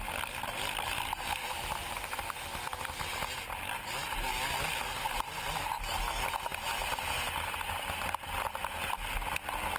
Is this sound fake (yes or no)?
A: no